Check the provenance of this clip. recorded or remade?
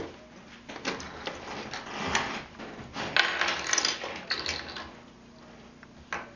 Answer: recorded